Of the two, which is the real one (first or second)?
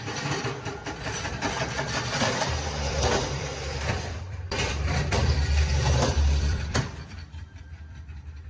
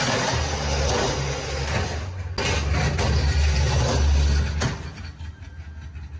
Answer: second